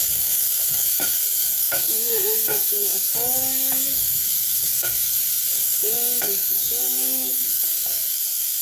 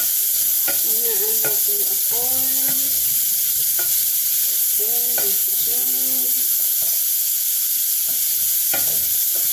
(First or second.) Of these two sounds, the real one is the second